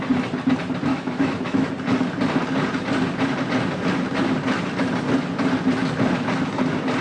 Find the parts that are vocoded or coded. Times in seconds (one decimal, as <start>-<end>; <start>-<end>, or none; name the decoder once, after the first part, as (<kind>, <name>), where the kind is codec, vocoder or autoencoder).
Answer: 0.9-1.7 (autoencoder, DAC-VAE)